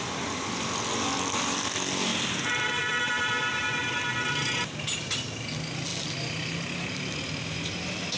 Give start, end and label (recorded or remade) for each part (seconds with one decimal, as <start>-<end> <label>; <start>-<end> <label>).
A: 0.0-8.2 recorded